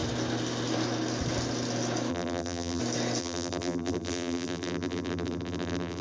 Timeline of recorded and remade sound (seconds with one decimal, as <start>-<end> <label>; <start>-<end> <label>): 0.0-2.1 recorded; 2.1-2.8 remade; 2.8-3.2 recorded; 3.2-6.0 remade

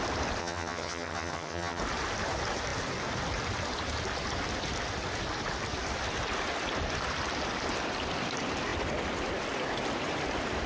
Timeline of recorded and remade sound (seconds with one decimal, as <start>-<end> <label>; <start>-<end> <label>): 0.0-0.4 recorded; 0.4-1.8 remade; 1.8-10.7 recorded

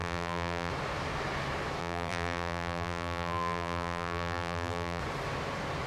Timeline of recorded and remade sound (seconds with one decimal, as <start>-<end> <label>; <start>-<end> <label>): 0.0-0.7 remade; 0.7-1.8 recorded; 1.8-5.0 remade; 5.0-5.9 recorded

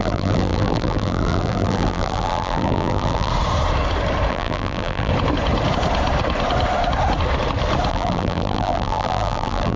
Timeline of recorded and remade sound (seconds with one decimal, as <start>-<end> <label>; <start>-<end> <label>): 0.0-3.3 remade; 3.3-4.3 recorded; 4.3-5.1 remade; 5.1-7.9 recorded; 7.9-9.8 remade

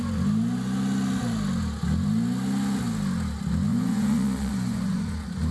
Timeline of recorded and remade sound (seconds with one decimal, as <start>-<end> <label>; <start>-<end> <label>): 0.0-3.7 recorded; 3.7-5.5 remade